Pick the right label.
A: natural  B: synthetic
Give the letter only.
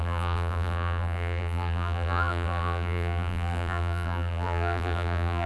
B